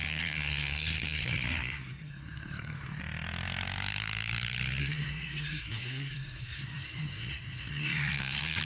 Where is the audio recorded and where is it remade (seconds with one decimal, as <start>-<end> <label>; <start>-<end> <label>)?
0.0-3.0 remade; 3.0-4.8 recorded; 4.8-8.6 remade